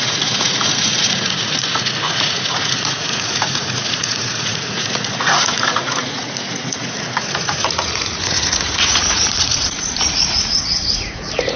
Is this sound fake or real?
fake